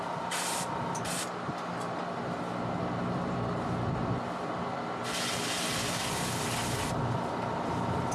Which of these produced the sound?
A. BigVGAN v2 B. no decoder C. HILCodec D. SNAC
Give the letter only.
B